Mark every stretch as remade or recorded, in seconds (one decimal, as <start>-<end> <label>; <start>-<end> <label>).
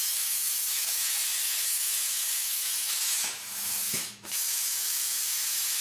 0.0-5.8 remade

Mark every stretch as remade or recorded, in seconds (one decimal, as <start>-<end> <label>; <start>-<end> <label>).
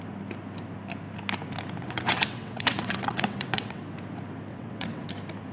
0.0-1.8 recorded; 1.8-3.8 remade; 3.8-4.5 recorded; 4.5-5.1 remade; 5.1-5.5 recorded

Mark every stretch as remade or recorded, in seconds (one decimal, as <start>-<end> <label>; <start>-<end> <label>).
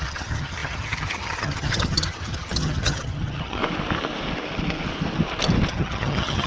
0.0-3.6 remade; 3.6-5.7 recorded; 5.7-6.5 remade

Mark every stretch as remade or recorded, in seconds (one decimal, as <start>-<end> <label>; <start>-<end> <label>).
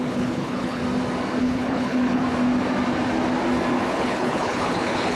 0.0-0.8 remade; 0.8-1.4 recorded; 1.4-2.2 remade; 2.2-3.9 recorded; 3.9-5.2 remade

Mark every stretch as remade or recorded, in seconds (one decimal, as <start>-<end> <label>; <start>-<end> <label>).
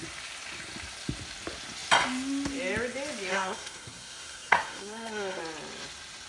0.0-3.3 recorded; 3.3-5.4 remade; 5.4-6.3 recorded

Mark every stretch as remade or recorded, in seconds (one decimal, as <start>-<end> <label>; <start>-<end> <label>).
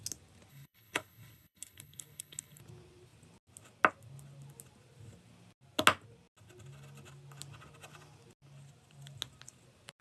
0.0-0.5 recorded; 0.5-2.6 remade; 2.6-10.0 recorded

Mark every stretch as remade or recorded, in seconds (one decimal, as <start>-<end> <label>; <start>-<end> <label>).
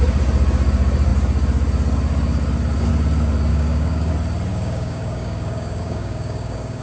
0.0-3.5 recorded; 3.5-4.1 remade; 4.1-4.5 recorded; 4.5-6.8 remade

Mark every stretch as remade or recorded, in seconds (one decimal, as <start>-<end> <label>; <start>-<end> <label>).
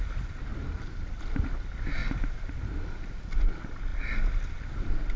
0.0-5.2 recorded